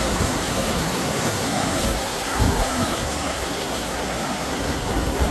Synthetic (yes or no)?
yes